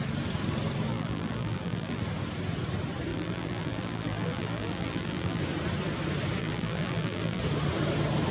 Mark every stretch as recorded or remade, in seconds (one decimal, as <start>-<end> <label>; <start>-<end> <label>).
0.0-0.9 recorded; 0.9-2.0 remade; 2.0-3.1 recorded; 3.1-5.4 remade; 5.4-6.4 recorded; 6.4-7.4 remade; 7.4-8.3 recorded